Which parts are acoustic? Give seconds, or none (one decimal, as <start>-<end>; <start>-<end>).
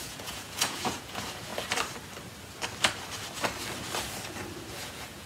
1.5-4.7